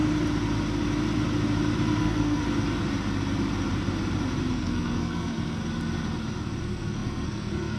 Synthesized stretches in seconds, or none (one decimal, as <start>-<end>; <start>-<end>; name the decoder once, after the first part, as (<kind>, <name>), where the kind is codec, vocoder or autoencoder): 2.0-2.4 (codec, SNAC); 4.5-5.6; 6.6-7.8